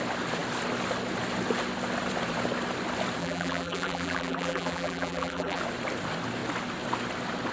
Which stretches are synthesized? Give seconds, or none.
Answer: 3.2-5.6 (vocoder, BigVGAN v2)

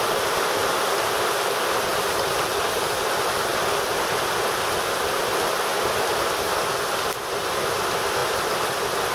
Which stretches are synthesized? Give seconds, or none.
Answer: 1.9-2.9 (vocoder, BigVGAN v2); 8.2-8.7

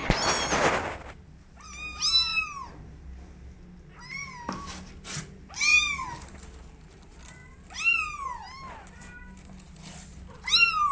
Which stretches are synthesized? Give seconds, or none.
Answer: none

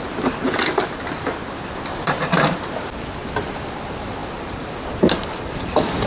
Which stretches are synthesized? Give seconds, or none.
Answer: 1.9-2.6 (vocoder, BigVGAN v2); 4.2-6.1

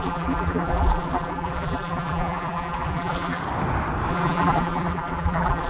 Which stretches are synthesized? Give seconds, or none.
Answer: 0.0-3.4 (vocoder, BigVGAN v2); 4.1-5.7